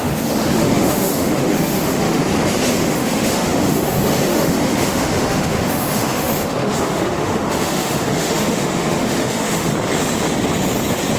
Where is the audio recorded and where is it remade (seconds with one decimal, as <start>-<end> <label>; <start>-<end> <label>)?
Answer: 0.0-2.2 remade; 2.2-2.7 recorded; 2.7-9.7 remade; 9.7-11.2 recorded